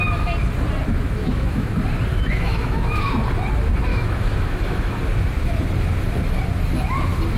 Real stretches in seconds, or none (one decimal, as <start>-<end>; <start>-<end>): 0.0-0.9; 1.7-2.1; 3.1-3.9; 5.0-7.4